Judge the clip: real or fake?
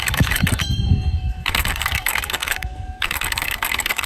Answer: fake